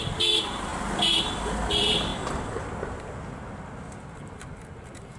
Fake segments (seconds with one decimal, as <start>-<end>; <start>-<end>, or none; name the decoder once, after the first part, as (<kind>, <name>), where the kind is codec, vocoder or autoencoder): 0.0-0.7 (vocoder, BigVGAN v2); 1.7-2.1; 4.0-5.2